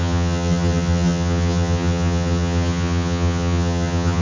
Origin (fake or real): fake